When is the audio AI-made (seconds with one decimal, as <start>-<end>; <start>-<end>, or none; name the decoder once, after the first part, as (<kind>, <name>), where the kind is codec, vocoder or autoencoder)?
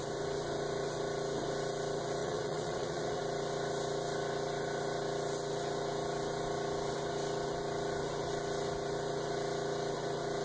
2.2-3.2 (vocoder, Vocos)